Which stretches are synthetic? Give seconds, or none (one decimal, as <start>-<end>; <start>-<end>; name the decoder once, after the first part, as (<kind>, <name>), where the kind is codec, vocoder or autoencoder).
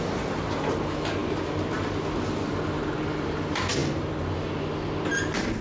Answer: 1.2-1.7 (vocoder, BigVGAN v2); 3.8-4.5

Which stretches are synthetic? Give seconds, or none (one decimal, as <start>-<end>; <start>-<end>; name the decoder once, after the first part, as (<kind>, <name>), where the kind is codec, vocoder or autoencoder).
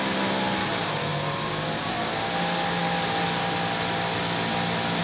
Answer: none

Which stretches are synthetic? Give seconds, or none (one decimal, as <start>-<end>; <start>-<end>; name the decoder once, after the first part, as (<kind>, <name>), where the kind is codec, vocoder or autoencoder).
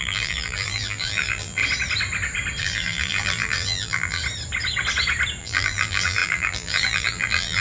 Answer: 0.0-1.6 (vocoder, BigVGAN v2); 2.6-4.2; 5.4-7.6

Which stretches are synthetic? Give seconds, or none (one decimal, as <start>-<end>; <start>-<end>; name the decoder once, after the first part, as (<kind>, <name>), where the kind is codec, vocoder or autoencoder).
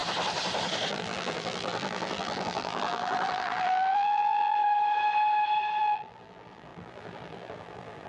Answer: 0.9-4.6 (vocoder, BigVGAN v2); 5.8-8.1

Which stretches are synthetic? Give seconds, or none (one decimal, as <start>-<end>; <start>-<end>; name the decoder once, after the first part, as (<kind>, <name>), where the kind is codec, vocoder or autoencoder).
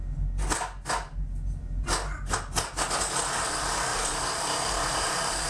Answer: 3.3-5.5 (vocoder, BigVGAN v2)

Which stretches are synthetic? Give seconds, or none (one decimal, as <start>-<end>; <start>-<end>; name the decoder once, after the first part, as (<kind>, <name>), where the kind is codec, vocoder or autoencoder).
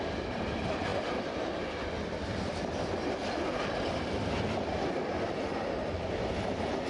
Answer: none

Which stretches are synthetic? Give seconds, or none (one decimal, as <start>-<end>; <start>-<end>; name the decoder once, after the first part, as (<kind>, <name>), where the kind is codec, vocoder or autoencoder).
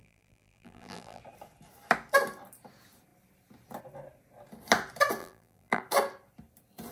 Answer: 0.0-1.2 (vocoder, BigVGAN v2); 5.2-5.8